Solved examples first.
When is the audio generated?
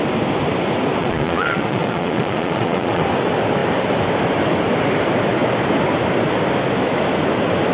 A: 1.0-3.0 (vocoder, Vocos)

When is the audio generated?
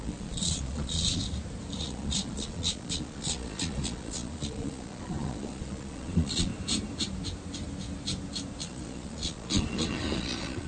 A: 0.0-1.2 (vocoder, Vocos); 1.8-6.5; 8.6-10.7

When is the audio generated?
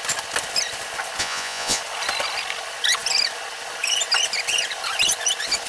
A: 1.2-1.8 (vocoder, Vocos)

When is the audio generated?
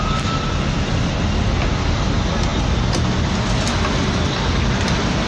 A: none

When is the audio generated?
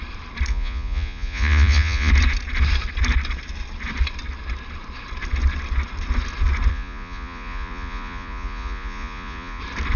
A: 0.5-2.1 (vocoder, Vocos); 6.7-9.6